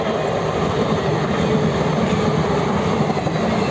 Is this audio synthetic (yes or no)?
no